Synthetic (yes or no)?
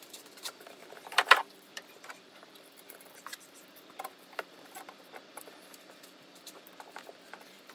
yes